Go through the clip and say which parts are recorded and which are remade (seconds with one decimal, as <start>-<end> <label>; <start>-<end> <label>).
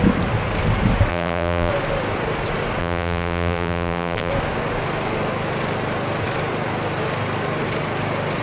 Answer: 0.0-1.1 recorded; 1.1-1.7 remade; 1.7-2.8 recorded; 2.8-4.3 remade; 4.3-8.4 recorded